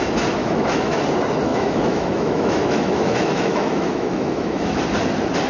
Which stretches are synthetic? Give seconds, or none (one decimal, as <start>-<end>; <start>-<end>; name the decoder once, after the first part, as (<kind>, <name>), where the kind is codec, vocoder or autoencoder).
0.4-1.0 (autoencoder, DAC-VAE); 1.5-4.8